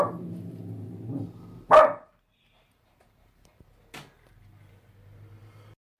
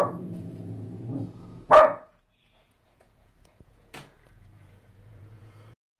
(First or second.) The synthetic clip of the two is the second